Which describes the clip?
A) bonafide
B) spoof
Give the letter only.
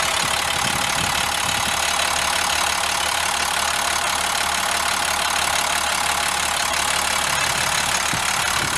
A